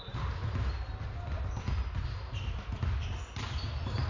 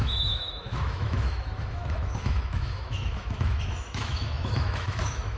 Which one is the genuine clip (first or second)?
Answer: first